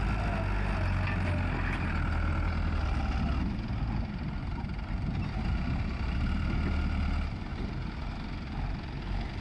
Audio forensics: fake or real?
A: real